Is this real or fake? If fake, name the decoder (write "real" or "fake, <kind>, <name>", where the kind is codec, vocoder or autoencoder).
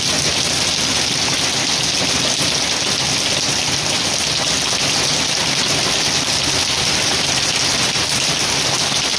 real